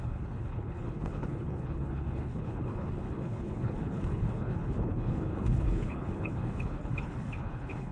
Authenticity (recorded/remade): remade